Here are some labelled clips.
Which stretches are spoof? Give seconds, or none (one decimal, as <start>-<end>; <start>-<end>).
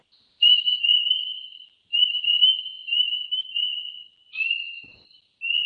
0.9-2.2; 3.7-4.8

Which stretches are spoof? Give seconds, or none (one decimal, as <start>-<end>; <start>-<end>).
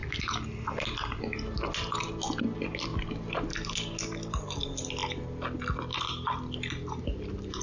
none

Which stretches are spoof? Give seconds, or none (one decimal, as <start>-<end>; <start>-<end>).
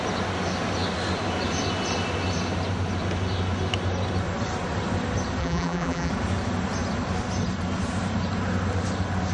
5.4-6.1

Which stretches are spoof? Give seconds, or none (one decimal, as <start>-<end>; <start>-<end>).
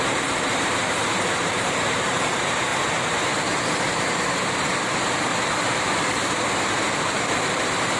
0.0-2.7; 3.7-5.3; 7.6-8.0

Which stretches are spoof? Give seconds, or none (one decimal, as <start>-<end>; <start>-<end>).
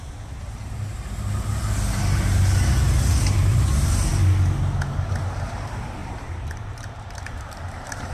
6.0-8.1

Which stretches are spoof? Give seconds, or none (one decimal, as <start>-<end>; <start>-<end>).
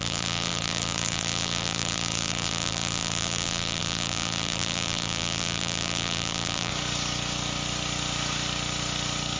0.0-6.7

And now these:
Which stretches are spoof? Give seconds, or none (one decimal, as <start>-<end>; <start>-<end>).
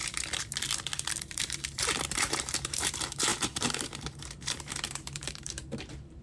1.2-6.2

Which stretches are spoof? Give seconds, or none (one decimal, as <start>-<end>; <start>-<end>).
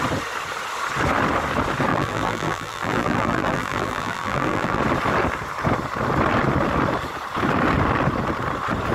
1.9-4.8